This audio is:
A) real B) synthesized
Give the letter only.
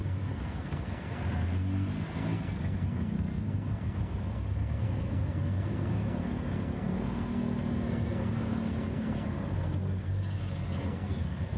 B